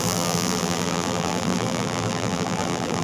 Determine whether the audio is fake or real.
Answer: fake